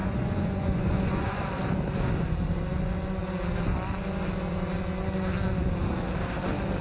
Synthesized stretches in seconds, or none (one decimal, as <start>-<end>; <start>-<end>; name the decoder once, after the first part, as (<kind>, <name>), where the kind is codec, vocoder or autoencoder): 0.0-1.4 (vocoder, Vocos)